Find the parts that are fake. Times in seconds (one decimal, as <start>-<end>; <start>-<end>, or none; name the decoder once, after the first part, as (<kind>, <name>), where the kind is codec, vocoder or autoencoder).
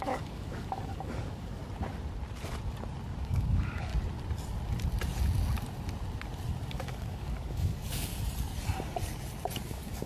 0.0-1.6 (codec, DAC); 3.2-3.9; 6.7-8.1; 9.7-10.1